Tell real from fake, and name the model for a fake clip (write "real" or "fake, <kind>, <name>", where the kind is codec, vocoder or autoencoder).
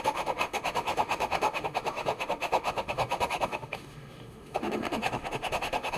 fake, autoencoder, DAC-VAE